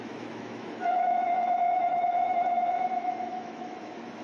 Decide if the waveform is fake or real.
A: fake